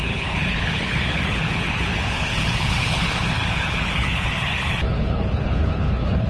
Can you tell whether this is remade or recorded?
remade